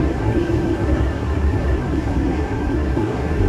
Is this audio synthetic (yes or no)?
yes